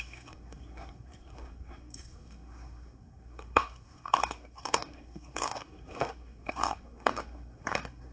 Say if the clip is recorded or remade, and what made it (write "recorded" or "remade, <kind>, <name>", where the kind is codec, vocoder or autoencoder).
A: remade, codec, SNAC